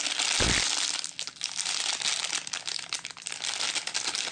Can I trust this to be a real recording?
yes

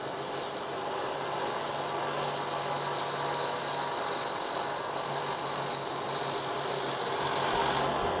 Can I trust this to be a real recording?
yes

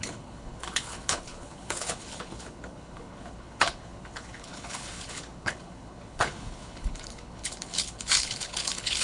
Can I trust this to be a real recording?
no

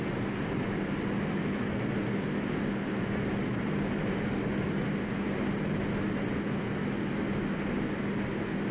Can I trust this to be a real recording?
yes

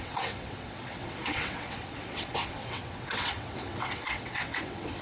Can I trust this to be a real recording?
no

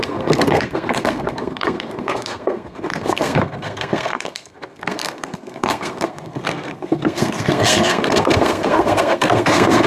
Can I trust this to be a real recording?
no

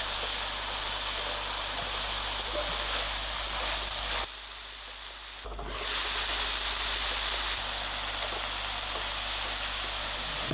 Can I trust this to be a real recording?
yes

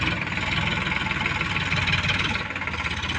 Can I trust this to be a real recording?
yes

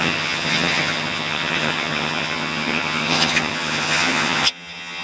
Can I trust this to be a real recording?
no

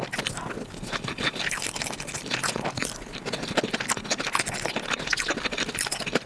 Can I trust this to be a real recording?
yes